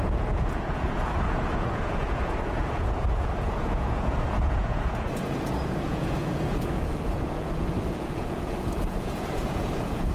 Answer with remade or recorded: remade